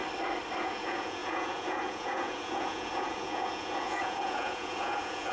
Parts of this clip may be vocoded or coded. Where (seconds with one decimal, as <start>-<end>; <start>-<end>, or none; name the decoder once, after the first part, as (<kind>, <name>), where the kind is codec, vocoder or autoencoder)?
0.6-5.3 (vocoder, Vocos)